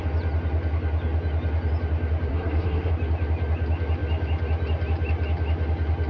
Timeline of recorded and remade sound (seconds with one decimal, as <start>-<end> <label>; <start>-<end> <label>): 0.0-2.3 recorded; 2.3-2.9 remade; 2.9-6.1 recorded